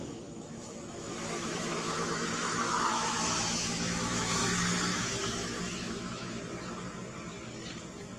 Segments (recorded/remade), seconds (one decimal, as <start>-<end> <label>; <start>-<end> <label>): 0.0-4.4 remade; 4.4-4.9 recorded; 4.9-6.4 remade; 6.4-8.2 recorded